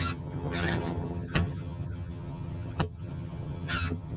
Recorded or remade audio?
remade